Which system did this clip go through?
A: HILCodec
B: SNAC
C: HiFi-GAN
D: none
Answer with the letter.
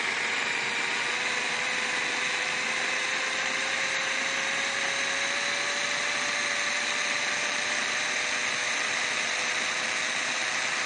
D